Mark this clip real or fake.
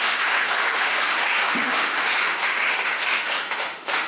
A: fake